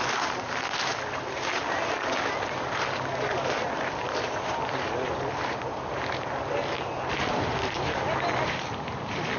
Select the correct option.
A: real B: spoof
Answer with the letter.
B